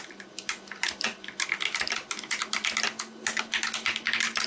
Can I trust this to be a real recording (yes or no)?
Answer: yes